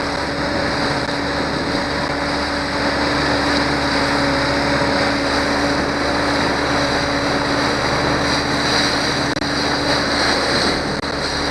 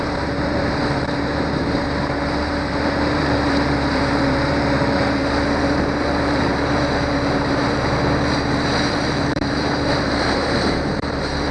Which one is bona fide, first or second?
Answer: first